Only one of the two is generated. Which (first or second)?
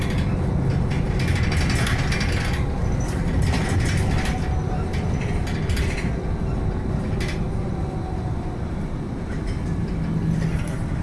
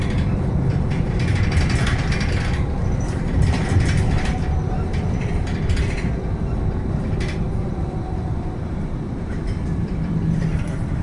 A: second